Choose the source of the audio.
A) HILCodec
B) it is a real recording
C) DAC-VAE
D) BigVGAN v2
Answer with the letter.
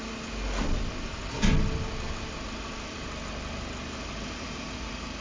B